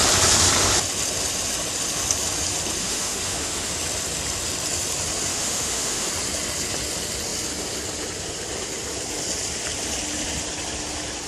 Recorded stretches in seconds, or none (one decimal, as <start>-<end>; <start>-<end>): 0.0-2.8; 3.7-5.3; 6.1-11.3